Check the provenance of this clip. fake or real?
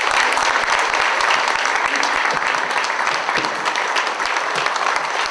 fake